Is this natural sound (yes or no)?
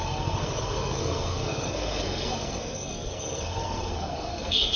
no